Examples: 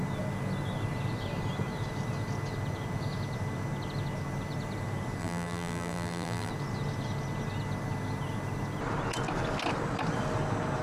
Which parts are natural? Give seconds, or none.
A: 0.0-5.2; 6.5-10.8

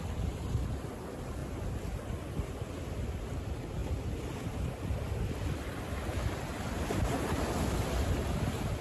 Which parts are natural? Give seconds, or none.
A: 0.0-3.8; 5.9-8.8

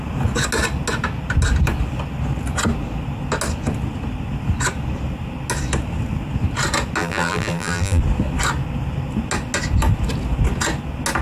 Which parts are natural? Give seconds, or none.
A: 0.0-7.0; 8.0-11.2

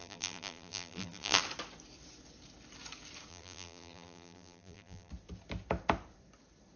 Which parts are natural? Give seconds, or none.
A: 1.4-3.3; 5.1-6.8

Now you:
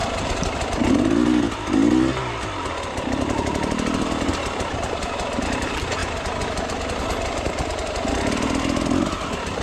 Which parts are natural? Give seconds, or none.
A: 0.9-6.0; 7.0-9.6

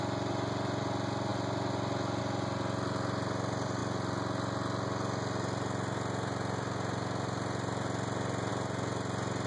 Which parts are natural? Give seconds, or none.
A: 0.0-9.5

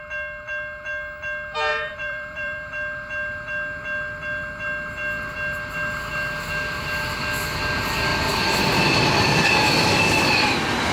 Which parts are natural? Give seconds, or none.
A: 0.0-1.7; 2.7-8.1; 8.6-10.9

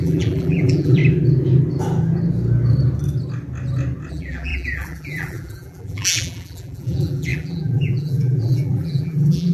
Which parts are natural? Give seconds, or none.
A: 1.0-4.1